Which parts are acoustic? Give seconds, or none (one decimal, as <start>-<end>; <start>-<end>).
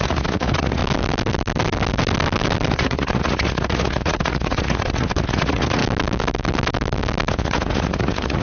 0.8-2.7; 5.8-7.3